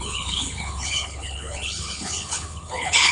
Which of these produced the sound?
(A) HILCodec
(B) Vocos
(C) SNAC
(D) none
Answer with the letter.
A